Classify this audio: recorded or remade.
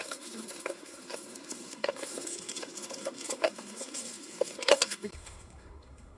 remade